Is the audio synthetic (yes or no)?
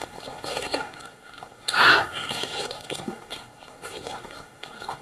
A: yes